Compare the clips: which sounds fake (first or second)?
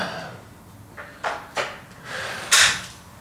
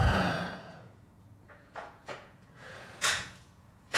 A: second